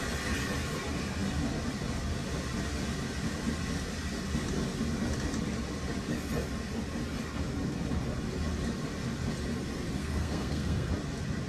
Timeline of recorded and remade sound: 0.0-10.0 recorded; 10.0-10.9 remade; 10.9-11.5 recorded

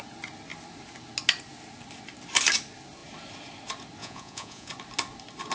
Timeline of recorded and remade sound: 0.0-4.0 recorded; 4.0-4.7 remade; 4.7-5.5 recorded

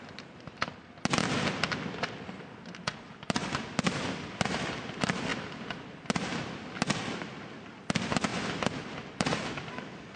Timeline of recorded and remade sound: 0.0-10.2 recorded

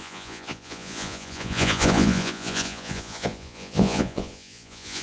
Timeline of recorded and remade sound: 0.0-5.0 remade

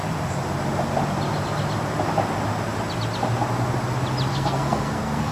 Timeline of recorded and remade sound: 0.0-4.3 recorded; 4.3-5.3 remade

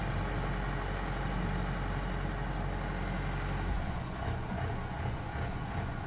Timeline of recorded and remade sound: 0.0-3.7 recorded; 3.7-6.1 remade